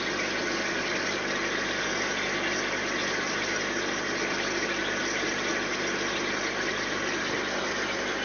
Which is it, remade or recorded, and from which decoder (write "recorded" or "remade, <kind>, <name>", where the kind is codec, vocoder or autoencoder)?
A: recorded